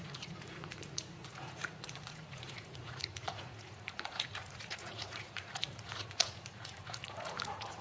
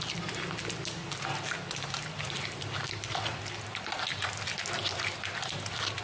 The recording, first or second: second